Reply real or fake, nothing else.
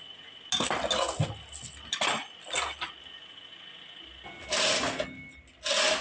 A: real